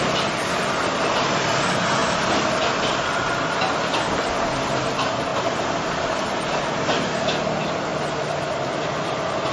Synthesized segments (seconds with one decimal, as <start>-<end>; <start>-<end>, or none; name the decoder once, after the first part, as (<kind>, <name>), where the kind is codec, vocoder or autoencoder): none